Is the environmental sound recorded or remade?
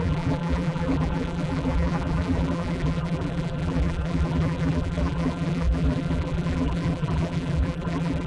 remade